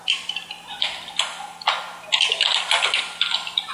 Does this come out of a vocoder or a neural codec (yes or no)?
no